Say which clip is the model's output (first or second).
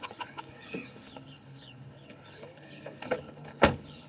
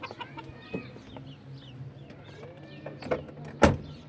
first